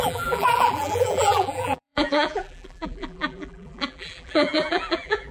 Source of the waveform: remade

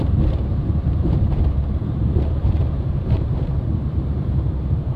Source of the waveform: remade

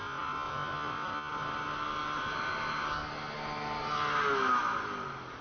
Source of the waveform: recorded